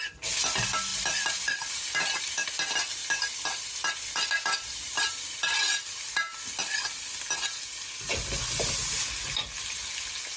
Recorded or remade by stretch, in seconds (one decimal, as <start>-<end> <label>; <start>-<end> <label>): 0.0-10.4 recorded